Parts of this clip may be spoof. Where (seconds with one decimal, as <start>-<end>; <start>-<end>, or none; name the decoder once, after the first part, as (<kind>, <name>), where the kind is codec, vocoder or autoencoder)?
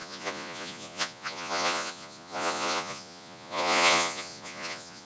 0.0-5.0 (vocoder, Vocos)